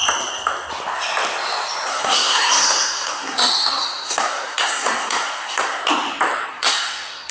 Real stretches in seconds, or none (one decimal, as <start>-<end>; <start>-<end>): 0.0-1.9; 5.8-6.5